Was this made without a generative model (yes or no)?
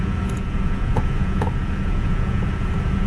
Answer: no